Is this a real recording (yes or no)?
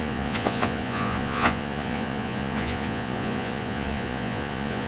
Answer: no